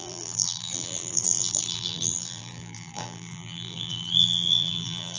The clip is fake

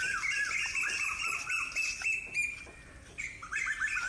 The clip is real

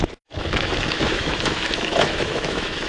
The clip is fake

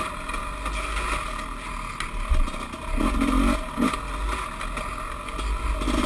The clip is real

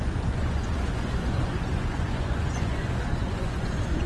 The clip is fake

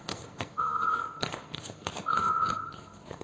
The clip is fake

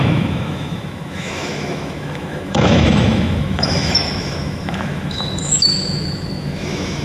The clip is fake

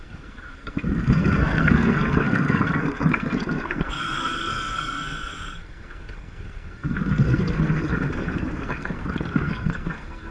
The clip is fake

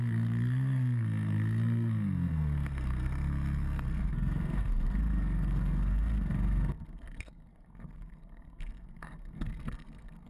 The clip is fake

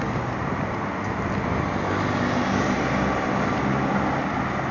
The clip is real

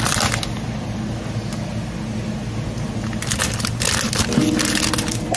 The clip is real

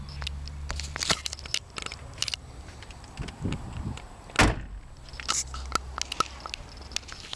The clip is real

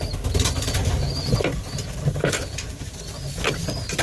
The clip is real